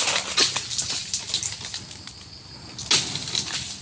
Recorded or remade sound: recorded